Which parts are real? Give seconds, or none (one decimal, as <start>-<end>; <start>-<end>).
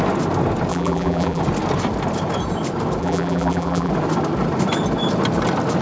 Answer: 0.0-0.7; 1.4-3.0; 3.9-5.8